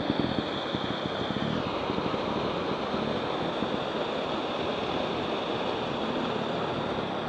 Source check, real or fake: real